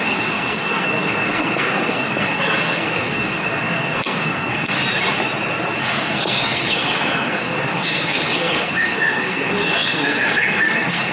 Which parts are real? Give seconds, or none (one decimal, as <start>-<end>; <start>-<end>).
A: 4.8-5.8